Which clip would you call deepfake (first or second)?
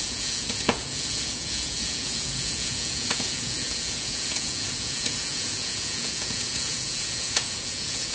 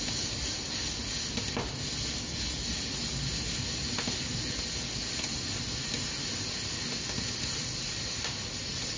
first